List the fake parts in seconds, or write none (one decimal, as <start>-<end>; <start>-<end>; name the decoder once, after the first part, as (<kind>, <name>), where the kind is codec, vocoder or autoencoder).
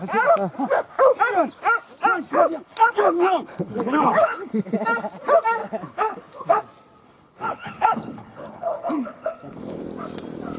2.3-4.6 (codec, HILCodec); 5.6-6.6; 7.0-9.8